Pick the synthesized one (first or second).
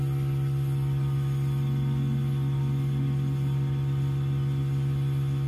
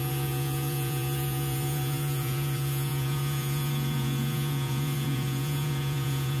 second